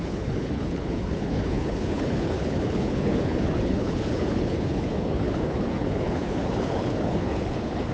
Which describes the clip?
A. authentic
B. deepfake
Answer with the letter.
B